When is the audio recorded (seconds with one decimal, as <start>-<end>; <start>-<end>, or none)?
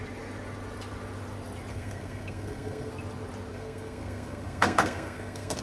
0.0-1.7; 2.9-3.5